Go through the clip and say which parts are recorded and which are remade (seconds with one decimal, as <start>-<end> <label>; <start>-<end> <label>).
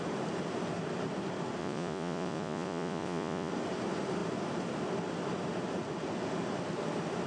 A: 0.0-1.6 recorded; 1.6-3.5 remade; 3.5-7.3 recorded